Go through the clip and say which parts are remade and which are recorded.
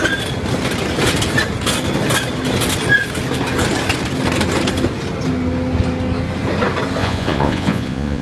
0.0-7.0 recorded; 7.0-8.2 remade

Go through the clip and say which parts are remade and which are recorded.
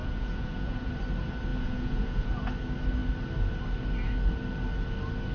0.0-0.9 remade; 0.9-1.5 recorded; 1.5-2.3 remade; 2.3-5.3 recorded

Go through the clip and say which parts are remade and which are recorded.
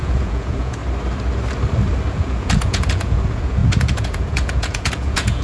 0.0-0.8 remade; 0.8-2.1 recorded; 2.1-5.4 remade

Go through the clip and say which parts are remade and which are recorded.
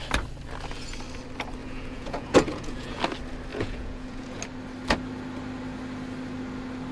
0.0-1.6 recorded; 1.6-3.0 remade; 3.0-3.5 recorded; 3.5-4.4 remade; 4.4-6.9 recorded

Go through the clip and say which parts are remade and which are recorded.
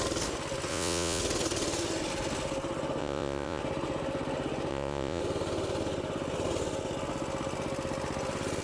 0.0-0.7 recorded; 0.7-1.2 remade; 1.2-3.0 recorded; 3.0-3.6 remade; 3.6-4.7 recorded; 4.7-5.2 remade; 5.2-8.6 recorded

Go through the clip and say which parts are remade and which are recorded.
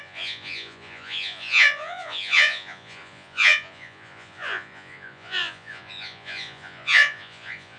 0.0-7.8 remade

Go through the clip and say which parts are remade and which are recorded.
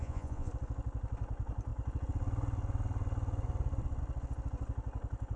0.0-0.5 remade; 0.5-5.4 recorded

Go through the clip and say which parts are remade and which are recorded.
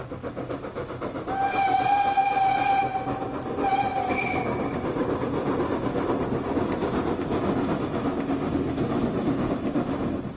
0.0-10.4 recorded